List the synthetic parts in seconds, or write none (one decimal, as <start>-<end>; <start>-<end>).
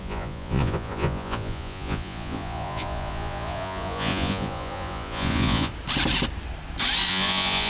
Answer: 0.0-5.7; 7.1-7.7